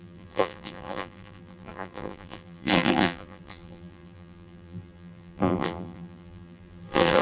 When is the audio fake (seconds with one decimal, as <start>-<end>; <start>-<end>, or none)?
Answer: 0.0-7.2